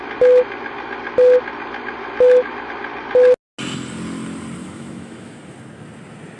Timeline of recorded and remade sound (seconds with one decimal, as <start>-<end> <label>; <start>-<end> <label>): 0.0-2.0 recorded; 2.0-2.7 remade; 2.7-4.6 recorded; 4.6-5.4 remade; 5.4-6.4 recorded